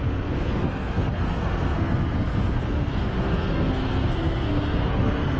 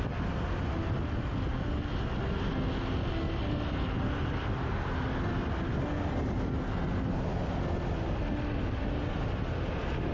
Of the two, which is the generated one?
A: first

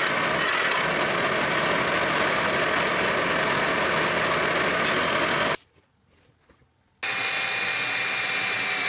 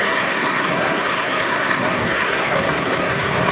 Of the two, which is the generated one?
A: second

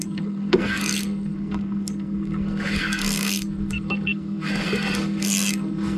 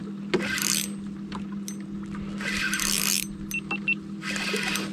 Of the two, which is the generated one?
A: first